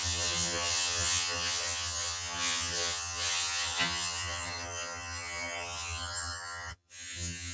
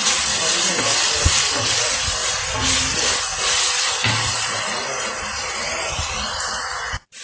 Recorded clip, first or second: second